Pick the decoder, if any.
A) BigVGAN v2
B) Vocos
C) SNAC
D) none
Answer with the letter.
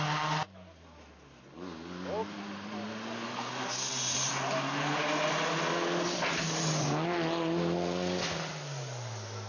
D